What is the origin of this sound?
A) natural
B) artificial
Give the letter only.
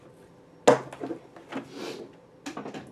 A